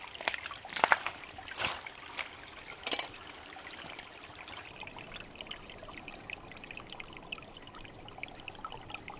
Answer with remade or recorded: recorded